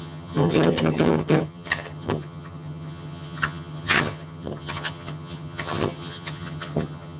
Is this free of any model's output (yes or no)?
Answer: no